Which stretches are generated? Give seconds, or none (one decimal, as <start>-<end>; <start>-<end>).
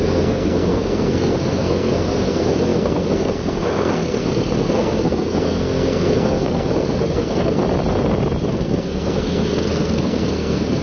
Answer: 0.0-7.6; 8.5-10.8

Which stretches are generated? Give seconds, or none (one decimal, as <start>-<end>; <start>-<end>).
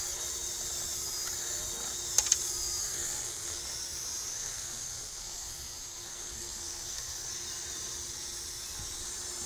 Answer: 2.8-3.6; 4.3-7.3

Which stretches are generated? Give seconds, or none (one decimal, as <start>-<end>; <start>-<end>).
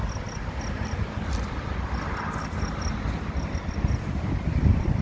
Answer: none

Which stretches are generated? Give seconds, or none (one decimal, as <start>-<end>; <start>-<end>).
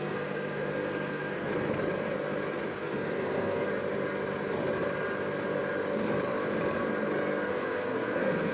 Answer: 0.0-1.5; 2.8-3.7; 7.5-8.5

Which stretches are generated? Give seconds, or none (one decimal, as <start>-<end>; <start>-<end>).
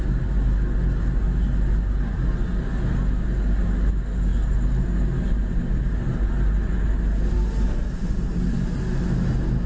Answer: none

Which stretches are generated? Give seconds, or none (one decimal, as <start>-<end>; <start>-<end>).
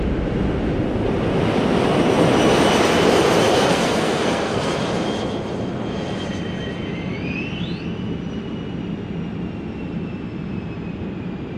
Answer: 3.5-4.7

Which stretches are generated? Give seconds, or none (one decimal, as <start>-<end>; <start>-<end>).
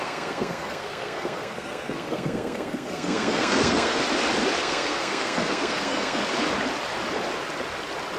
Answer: 0.0-4.0; 4.6-6.2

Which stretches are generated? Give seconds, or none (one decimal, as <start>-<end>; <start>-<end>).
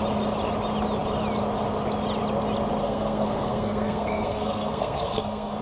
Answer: 2.8-5.6